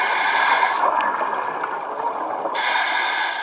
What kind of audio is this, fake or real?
real